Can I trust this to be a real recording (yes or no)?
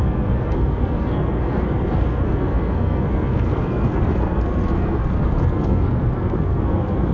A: no